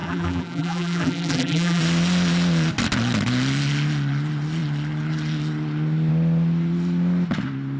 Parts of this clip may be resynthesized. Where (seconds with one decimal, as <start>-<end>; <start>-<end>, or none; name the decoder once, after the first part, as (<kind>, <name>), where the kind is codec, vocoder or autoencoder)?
0.0-1.8 (vocoder, BigVGAN v2)

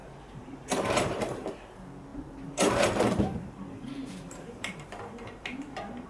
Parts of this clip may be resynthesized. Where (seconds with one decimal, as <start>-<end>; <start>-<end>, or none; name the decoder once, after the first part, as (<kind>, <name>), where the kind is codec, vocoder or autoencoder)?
0.0-6.1 (vocoder, BigVGAN v2)

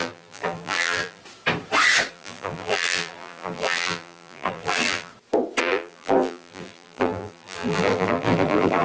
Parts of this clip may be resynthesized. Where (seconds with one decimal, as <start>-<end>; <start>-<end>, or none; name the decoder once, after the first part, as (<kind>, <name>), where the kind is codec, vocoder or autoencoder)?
0.0-1.2 (vocoder, BigVGAN v2); 2.1-5.1; 5.6-8.8